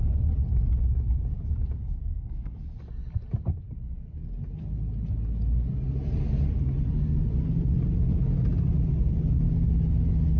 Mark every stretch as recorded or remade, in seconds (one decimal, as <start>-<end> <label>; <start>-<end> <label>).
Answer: 0.0-2.0 recorded; 2.0-2.5 remade; 2.5-10.4 recorded